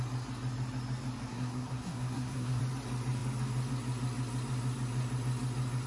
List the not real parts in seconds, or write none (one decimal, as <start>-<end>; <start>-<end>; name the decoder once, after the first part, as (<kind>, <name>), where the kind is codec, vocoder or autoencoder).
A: 1.3-2.6 (codec, SNAC)